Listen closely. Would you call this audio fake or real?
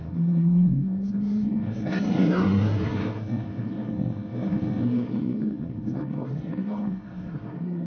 fake